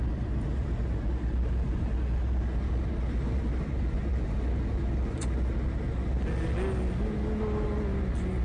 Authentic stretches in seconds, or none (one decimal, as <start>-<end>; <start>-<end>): 0.0-8.4